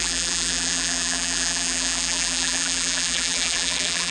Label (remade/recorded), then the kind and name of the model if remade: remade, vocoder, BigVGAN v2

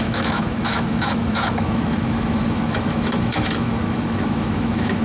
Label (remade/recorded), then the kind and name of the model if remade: remade, autoencoder, DAC-VAE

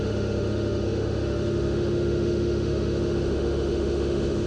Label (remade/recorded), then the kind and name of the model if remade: remade, autoencoder, DAC-VAE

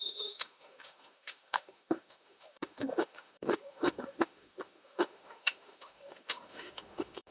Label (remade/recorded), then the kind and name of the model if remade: remade, autoencoder, DAC-VAE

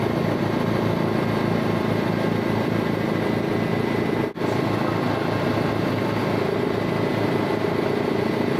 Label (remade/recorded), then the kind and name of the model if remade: recorded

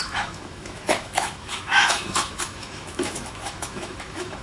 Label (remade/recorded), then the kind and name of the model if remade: remade, autoencoder, DAC-VAE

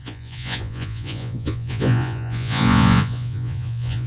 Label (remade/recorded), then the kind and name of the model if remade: remade, vocoder, Vocos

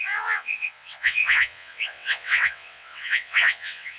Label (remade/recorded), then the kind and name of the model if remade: remade, vocoder, WaveNeXt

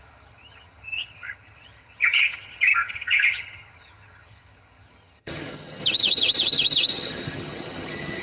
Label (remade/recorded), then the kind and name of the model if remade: remade, vocoder, HiFi-GAN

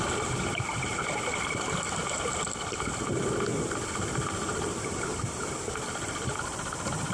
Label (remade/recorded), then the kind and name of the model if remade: recorded